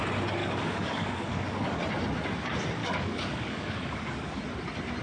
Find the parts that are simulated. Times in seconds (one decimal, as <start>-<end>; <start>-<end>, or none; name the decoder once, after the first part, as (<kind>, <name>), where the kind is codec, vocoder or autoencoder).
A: 0.4-1.8 (codec, DAC); 2.8-4.4